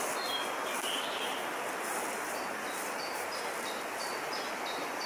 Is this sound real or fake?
real